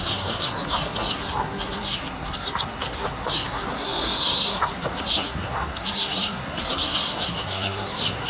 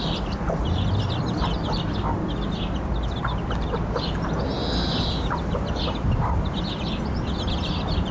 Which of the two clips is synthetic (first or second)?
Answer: first